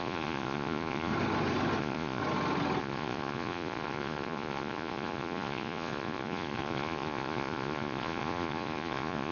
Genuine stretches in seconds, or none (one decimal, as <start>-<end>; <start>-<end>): 1.1-1.8; 2.2-2.8